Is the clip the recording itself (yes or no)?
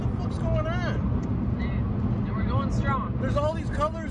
yes